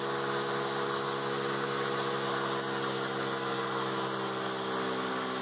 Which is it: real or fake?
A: real